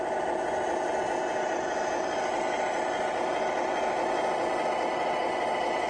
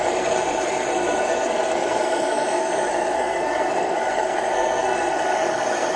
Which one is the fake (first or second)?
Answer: second